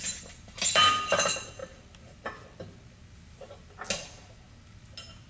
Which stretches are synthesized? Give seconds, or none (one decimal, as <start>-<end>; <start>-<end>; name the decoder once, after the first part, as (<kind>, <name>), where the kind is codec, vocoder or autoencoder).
none